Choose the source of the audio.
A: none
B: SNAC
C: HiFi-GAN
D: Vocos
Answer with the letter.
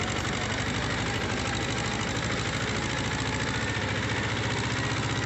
A